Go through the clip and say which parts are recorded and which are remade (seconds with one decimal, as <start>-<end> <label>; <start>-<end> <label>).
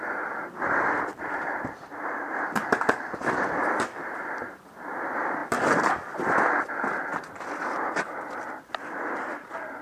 0.0-7.1 remade; 7.1-8.0 recorded; 8.0-9.8 remade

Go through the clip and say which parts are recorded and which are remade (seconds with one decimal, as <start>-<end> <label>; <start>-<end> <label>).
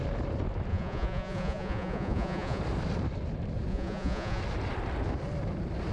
0.0-0.7 recorded; 0.7-2.6 remade; 2.6-3.7 recorded; 3.7-4.4 remade; 4.4-5.9 recorded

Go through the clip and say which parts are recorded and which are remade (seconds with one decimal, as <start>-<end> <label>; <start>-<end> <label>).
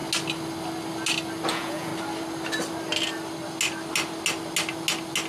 0.0-1.5 recorded; 1.5-1.9 remade; 1.9-5.3 recorded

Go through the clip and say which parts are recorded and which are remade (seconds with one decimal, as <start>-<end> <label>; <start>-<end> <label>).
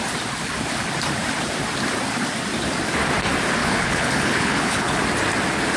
0.0-3.6 recorded; 3.6-5.0 remade; 5.0-5.8 recorded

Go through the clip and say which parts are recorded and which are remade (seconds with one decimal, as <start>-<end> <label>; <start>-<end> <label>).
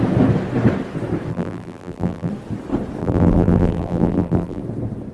0.0-1.3 recorded; 1.3-2.3 remade; 2.3-3.0 recorded; 3.0-4.6 remade; 4.6-5.1 recorded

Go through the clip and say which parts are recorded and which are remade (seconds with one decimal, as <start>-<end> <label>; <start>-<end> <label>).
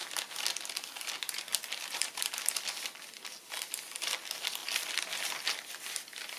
0.0-1.5 recorded; 1.5-2.3 remade; 2.3-4.6 recorded; 4.6-6.4 remade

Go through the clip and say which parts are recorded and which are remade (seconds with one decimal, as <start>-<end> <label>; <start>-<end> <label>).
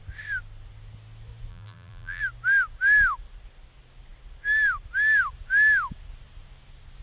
0.0-1.5 recorded; 1.5-2.2 remade; 2.2-7.0 recorded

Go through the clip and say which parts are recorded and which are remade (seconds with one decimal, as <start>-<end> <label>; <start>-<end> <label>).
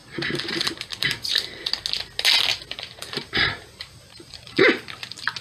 0.0-1.7 remade; 1.7-2.5 recorded; 2.5-4.7 remade; 4.7-5.4 recorded